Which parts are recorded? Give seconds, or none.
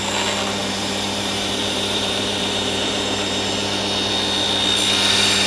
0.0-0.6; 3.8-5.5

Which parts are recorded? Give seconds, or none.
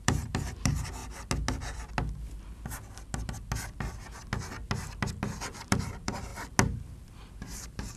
1.0-5.6; 6.3-7.3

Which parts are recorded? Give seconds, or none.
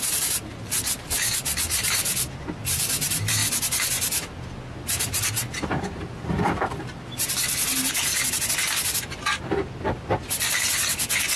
3.4-5.0; 8.1-11.4